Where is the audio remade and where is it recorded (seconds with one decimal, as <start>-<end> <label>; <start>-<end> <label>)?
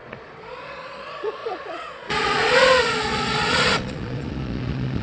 0.0-5.0 remade